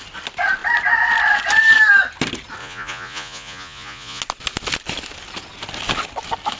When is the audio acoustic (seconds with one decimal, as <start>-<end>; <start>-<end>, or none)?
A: 0.0-2.6; 4.2-6.6